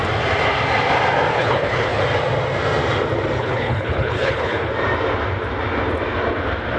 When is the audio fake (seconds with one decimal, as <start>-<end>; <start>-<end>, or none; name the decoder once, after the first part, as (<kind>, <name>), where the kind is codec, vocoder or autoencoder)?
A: 1.3-2.0 (codec, HILCodec); 3.4-4.7